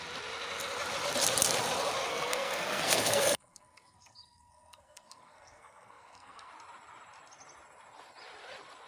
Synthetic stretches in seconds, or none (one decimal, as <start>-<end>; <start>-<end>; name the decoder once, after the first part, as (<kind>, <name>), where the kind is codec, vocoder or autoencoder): 2.1-6.5 (codec, SNAC)